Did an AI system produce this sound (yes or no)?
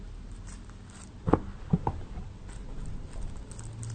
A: no